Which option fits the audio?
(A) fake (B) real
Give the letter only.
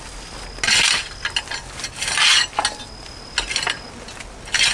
B